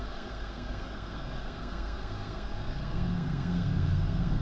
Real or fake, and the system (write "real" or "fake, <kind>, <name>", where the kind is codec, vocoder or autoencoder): fake, codec, SNAC